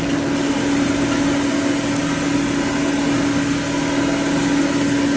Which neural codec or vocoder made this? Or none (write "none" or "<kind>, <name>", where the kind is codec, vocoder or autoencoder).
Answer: none